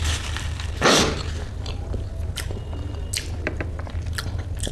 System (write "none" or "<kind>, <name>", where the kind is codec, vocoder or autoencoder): none